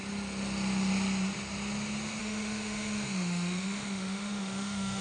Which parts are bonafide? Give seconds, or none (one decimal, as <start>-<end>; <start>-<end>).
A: 0.0-2.2